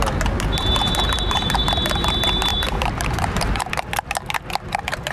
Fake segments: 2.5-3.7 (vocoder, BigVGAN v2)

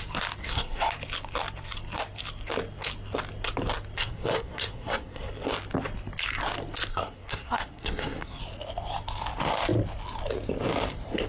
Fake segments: 0.4-0.9 (codec, SNAC); 4.0-5.3; 6.9-8.4

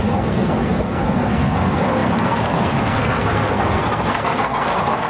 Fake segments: 0.0-5.1 (codec, SNAC)

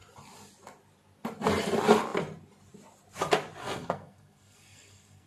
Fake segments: 3.6-5.3 (codec, SNAC)

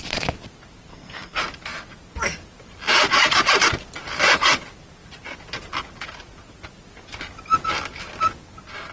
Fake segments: 0.9-1.4 (codec, SNAC)